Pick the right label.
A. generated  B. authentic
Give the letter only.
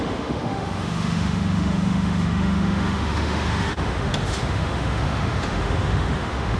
A